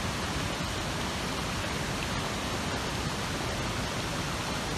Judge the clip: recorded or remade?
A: recorded